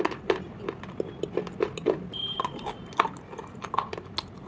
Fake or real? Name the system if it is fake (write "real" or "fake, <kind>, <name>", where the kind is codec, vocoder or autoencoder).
real